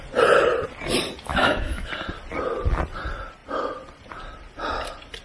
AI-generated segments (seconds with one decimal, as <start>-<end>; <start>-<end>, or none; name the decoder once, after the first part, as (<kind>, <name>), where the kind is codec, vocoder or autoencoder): 1.3-1.9 (autoencoder, DAC-VAE)